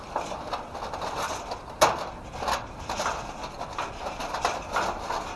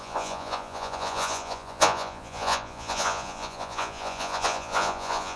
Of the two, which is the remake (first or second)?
second